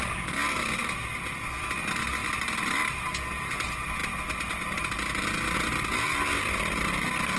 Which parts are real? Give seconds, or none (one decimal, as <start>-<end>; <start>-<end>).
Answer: 0.0-7.4